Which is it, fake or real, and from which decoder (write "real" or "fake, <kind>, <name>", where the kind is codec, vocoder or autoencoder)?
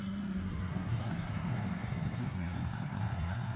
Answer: fake, codec, SNAC